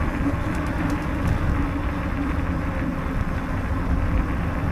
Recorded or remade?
recorded